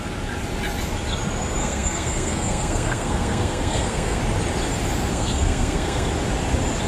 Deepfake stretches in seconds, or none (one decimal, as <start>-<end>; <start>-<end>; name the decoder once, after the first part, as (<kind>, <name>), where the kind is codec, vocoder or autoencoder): 1.6-4.2 (codec, SNAC); 5.1-6.1